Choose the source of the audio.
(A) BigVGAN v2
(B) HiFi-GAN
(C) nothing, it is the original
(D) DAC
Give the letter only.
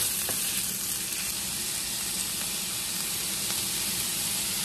C